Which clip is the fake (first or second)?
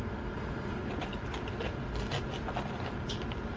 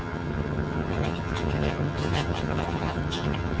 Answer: second